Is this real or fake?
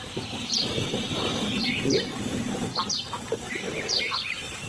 fake